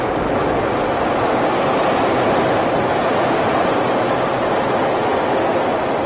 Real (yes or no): yes